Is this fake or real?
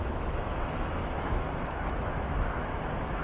fake